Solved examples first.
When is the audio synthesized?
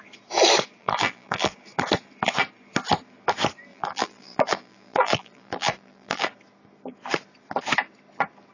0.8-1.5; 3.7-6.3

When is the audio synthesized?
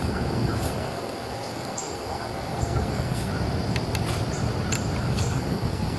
0.0-3.3; 5.0-6.0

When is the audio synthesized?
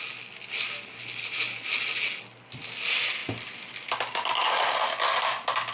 none